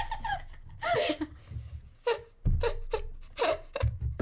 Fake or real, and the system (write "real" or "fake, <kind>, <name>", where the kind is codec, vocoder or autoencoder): real